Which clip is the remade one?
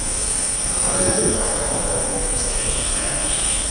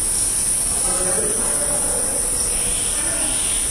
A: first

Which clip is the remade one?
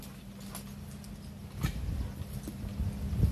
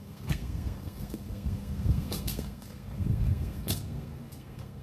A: second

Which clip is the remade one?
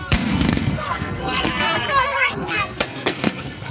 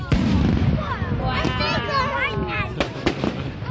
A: first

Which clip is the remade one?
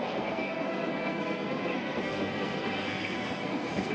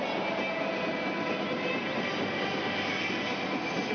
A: first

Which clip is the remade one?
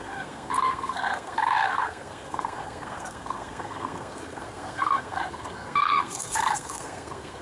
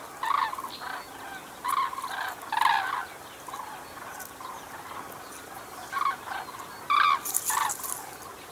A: first